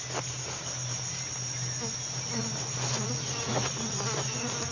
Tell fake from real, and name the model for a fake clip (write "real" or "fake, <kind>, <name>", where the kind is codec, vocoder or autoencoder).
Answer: real